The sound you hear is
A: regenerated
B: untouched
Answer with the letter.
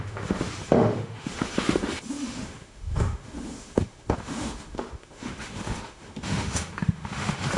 A